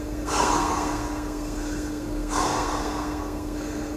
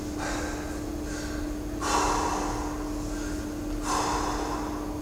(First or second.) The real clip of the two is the second